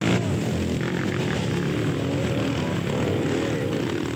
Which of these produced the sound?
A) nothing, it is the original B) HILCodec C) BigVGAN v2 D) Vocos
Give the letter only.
A